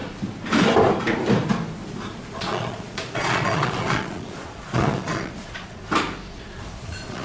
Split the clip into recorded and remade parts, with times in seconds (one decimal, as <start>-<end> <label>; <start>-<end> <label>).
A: 0.0-2.3 recorded; 2.3-5.8 remade; 5.8-6.3 recorded; 6.3-7.2 remade